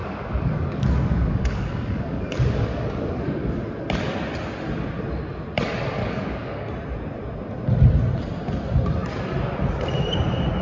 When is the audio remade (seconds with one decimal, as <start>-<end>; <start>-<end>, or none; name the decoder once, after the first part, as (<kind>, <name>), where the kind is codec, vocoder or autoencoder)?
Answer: 0.0-3.5 (codec, DAC); 6.0-6.7